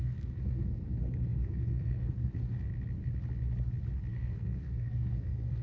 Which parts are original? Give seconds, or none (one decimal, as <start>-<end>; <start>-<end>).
2.7-4.1